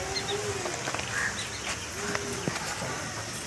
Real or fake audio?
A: real